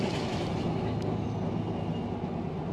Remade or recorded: recorded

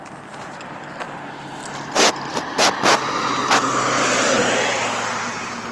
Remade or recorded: recorded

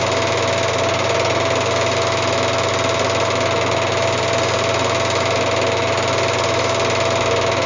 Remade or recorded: recorded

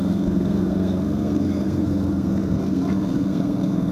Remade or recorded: remade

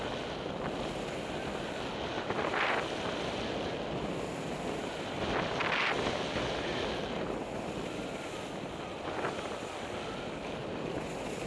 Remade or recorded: recorded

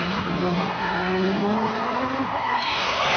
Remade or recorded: remade